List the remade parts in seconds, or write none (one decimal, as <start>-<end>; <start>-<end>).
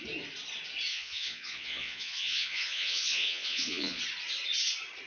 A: 0.9-4.0